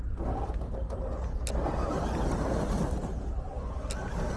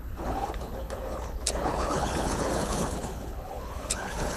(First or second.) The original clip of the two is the first